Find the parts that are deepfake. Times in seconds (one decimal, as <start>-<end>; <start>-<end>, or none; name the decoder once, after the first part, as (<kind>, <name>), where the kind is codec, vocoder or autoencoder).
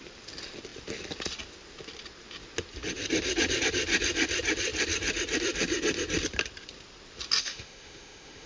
7.4-8.5 (autoencoder, DAC-VAE)